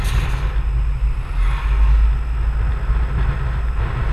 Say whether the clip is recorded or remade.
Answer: recorded